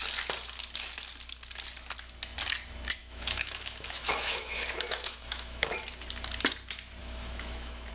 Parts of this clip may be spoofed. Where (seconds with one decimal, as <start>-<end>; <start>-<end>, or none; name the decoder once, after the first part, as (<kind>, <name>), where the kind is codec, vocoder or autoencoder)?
3.0-5.8 (autoencoder, DAC-VAE); 7.0-7.9